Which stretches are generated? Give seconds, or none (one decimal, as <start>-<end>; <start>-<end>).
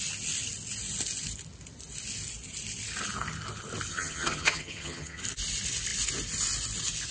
3.9-5.2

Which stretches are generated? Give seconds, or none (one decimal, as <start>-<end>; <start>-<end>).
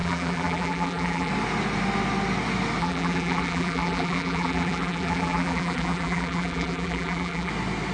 0.0-1.3; 2.8-7.5